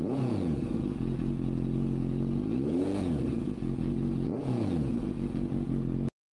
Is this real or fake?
fake